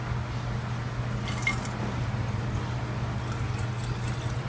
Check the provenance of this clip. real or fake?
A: real